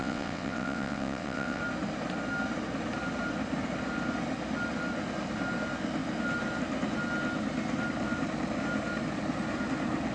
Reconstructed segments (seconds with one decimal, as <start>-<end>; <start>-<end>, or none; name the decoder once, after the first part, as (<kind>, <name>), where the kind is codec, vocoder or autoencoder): 0.0-1.6 (vocoder, WaveNeXt)